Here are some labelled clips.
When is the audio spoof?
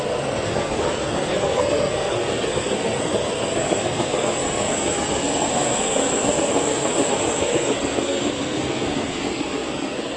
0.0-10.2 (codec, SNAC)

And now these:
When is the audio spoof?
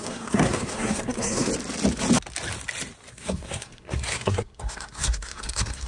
0.0-1.5 (codec, SNAC); 3.1-5.9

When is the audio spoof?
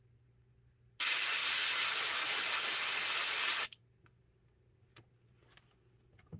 none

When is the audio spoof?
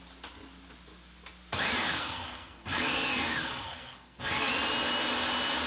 1.8-4.5 (codec, SNAC)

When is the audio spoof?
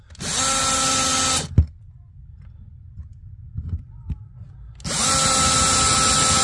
none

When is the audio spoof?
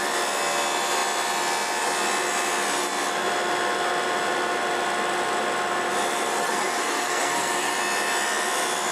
6.4-7.7 (codec, SNAC)